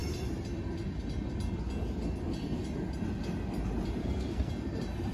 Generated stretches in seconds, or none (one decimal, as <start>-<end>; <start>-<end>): 4.0-4.5